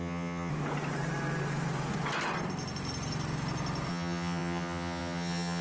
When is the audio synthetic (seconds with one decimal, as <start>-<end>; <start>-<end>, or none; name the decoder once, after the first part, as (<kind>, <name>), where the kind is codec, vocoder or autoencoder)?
0.0-0.5 (vocoder, HiFi-GAN); 3.9-5.6